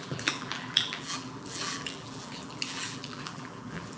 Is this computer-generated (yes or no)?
yes